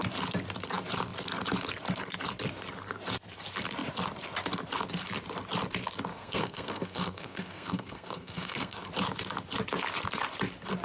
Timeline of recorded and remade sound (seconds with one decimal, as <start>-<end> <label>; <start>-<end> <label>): 0.0-6.1 recorded; 6.1-8.9 remade; 8.9-10.8 recorded